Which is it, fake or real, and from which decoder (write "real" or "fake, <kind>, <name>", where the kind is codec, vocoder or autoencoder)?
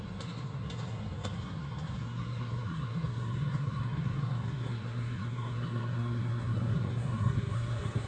fake, codec, SNAC